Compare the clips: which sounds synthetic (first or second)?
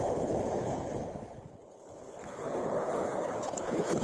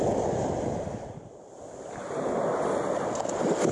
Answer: first